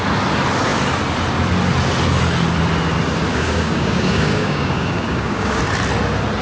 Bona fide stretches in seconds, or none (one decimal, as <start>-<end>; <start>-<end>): 0.0-3.3; 5.6-6.4

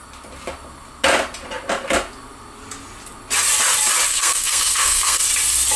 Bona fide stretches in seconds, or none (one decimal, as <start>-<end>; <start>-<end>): 0.0-4.1; 5.2-5.8

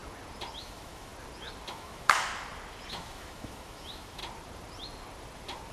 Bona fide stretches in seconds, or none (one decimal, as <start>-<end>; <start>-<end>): 0.0-0.6; 1.1-1.7; 2.3-2.9; 4.2-5.7

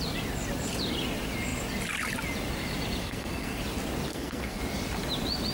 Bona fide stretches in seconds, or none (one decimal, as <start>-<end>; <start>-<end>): 0.0-3.0; 3.6-4.1; 4.6-5.5